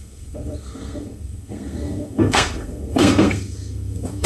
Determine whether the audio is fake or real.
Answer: fake